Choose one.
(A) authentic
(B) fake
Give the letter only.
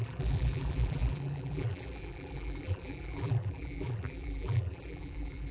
B